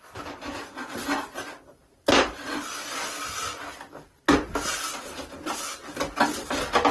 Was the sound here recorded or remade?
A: recorded